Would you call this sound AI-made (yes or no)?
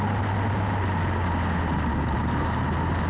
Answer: no